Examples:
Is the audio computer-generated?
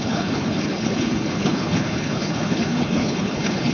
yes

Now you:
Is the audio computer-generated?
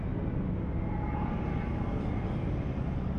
no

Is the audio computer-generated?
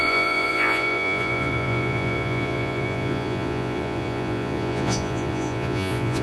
yes